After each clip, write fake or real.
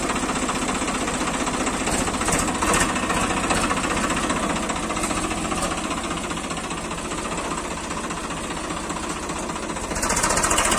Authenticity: real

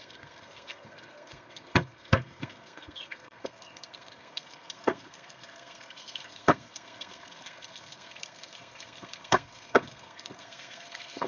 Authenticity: fake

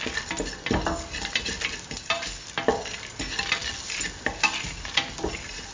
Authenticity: real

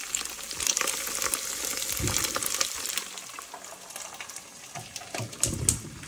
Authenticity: real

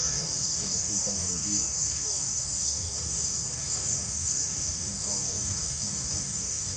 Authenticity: fake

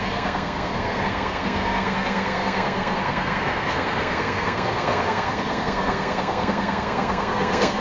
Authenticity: fake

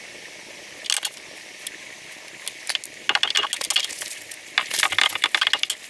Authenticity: real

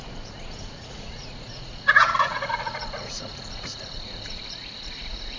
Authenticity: fake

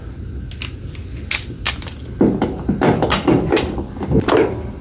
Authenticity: real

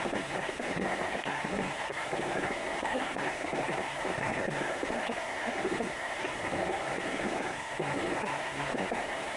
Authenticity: fake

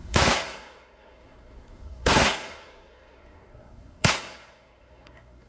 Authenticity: fake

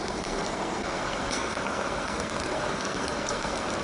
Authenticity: fake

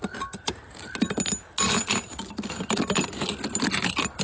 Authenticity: real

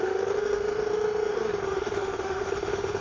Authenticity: fake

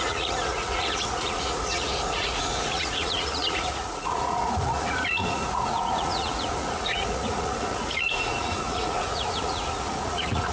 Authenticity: fake